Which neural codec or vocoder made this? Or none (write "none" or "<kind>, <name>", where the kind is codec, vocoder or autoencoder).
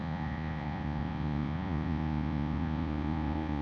vocoder, Vocos